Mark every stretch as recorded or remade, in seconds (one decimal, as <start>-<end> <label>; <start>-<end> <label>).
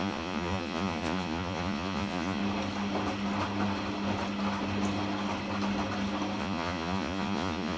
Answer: 0.0-2.4 remade; 2.4-6.4 recorded; 6.4-7.8 remade